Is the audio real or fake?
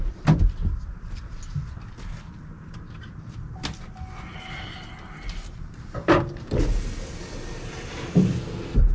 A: real